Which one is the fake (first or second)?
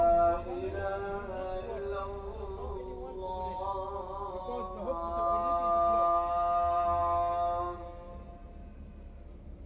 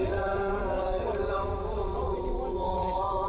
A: second